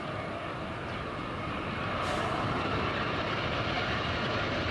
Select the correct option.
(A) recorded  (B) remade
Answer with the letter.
B